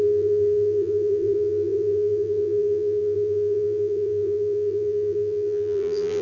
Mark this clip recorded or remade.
remade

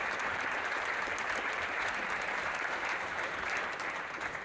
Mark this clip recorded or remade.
remade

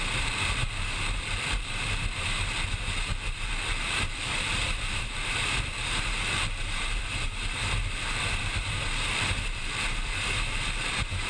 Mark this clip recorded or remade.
remade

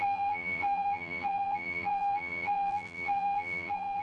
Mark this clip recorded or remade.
remade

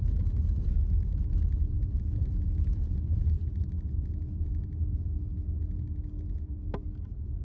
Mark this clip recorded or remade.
recorded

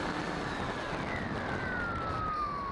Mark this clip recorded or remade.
remade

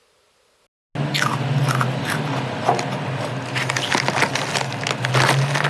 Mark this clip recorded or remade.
recorded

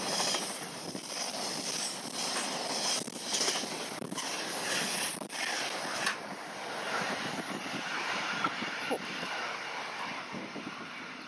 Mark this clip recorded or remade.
remade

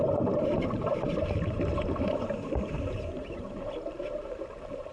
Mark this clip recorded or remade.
remade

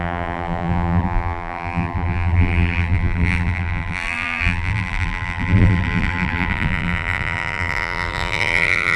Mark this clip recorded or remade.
remade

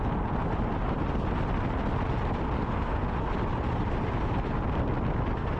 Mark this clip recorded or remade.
recorded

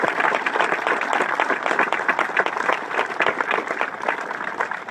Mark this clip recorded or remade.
recorded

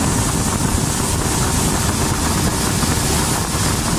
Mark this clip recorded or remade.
recorded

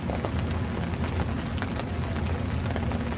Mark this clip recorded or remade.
recorded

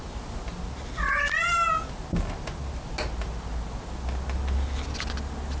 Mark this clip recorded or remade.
recorded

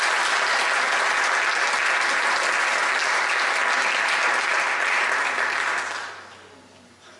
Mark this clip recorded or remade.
recorded